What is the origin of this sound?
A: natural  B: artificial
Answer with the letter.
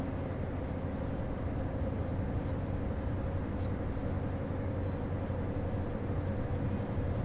A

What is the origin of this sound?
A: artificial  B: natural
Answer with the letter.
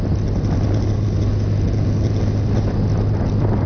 B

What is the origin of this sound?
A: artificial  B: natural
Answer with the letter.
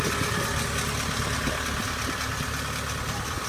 B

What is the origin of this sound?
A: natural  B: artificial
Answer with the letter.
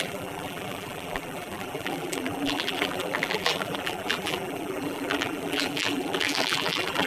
B